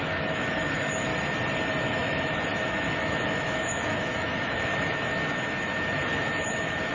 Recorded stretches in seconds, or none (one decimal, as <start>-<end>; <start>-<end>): 1.1-1.8